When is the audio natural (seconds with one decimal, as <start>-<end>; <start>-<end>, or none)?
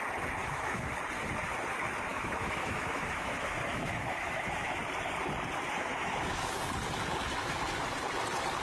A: 0.0-0.4; 0.9-2.1; 4.8-5.9; 6.5-8.6